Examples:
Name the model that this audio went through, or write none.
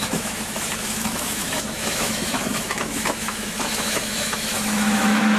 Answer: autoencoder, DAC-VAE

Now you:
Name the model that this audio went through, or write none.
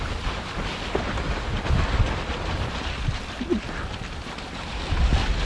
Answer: none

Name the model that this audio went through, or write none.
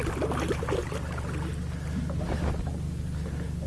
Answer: none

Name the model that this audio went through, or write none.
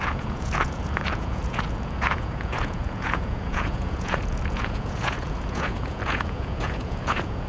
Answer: vocoder, Vocos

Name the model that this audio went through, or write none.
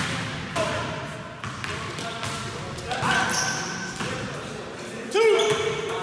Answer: none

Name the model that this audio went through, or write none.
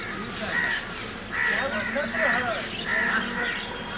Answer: none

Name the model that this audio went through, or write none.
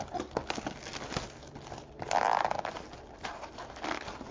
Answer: none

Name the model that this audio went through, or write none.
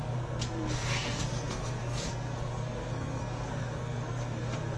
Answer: codec, SNAC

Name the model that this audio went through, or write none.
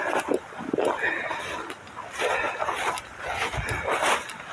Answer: none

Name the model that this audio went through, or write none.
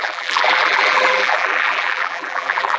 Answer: vocoder, BigVGAN v2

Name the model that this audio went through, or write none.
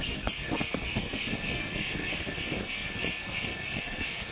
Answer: codec, SNAC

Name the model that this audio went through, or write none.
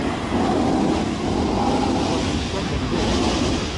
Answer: none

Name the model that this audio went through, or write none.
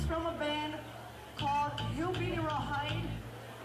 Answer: none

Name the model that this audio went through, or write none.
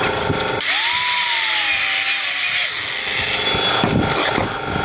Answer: none